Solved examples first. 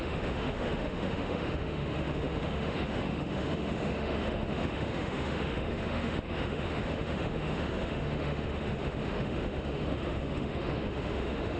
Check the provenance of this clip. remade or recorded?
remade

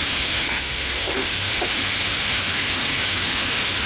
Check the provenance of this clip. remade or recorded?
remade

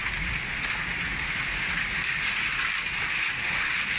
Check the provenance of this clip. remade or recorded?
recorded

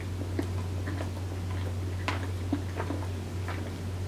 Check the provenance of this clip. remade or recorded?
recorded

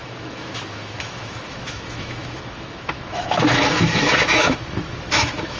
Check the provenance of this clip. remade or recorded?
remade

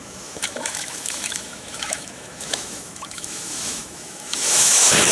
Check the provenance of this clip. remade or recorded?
remade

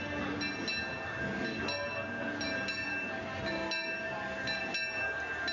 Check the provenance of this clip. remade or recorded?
recorded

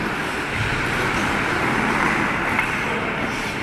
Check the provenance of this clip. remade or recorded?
recorded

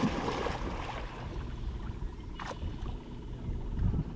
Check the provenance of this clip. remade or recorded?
recorded